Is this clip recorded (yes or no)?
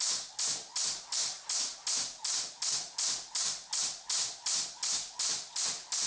yes